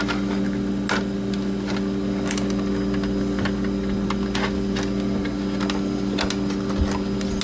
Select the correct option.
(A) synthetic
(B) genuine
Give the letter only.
B